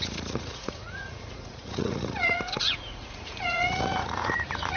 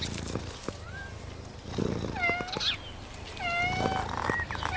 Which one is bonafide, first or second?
second